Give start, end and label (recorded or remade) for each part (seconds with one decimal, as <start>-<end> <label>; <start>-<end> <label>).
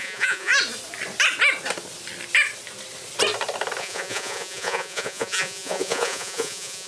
0.0-0.5 remade; 0.5-3.8 recorded; 3.8-6.9 remade